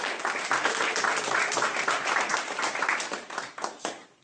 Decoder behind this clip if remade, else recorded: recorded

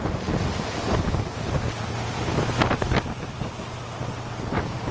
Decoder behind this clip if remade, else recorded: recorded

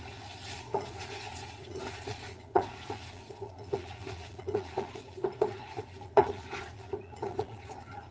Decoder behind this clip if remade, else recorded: remade, vocoder, Vocos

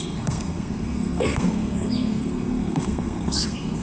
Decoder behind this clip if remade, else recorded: remade, codec, SNAC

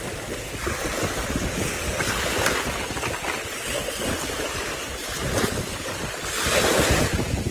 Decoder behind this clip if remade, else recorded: recorded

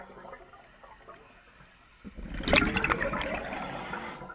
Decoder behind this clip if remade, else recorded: recorded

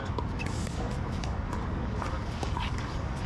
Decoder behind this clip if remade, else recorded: remade, codec, DAC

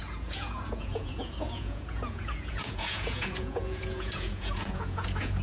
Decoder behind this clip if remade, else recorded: remade, vocoder, Vocos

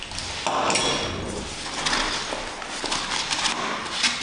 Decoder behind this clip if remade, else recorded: recorded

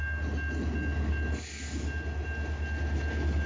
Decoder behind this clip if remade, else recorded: recorded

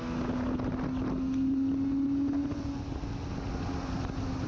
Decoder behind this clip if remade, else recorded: recorded